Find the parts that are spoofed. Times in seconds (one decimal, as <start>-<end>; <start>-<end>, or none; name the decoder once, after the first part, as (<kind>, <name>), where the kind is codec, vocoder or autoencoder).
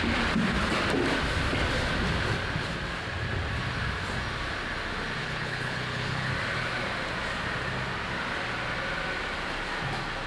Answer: 5.2-6.3 (codec, HILCodec)